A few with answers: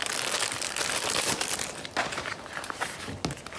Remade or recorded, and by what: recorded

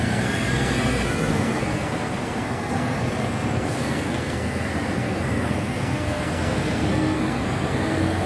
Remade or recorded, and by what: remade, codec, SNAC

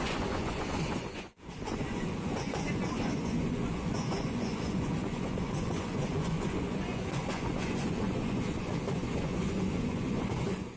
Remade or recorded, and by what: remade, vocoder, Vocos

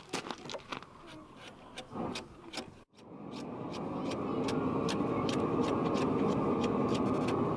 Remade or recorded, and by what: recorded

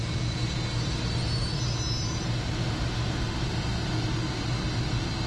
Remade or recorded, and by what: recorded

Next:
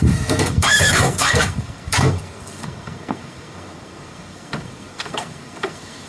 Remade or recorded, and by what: remade, codec, SNAC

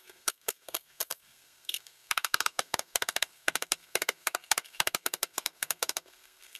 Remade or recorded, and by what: remade, codec, SNAC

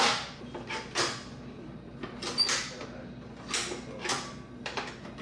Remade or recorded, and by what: recorded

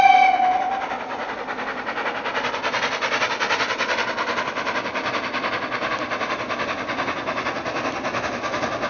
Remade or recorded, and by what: recorded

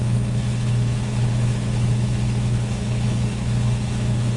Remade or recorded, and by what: remade, codec, HILCodec